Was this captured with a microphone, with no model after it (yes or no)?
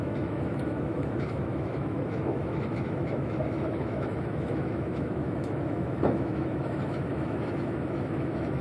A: no